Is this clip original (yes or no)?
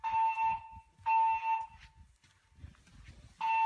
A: yes